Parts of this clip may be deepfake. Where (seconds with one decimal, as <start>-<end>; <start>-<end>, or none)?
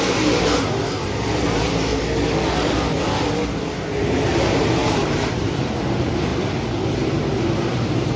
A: 0.0-1.9; 4.0-6.3; 6.9-8.2